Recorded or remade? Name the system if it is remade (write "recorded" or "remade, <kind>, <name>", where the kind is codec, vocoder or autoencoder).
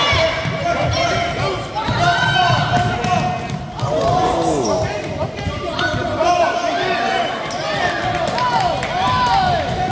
recorded